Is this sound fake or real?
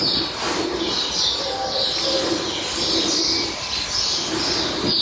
real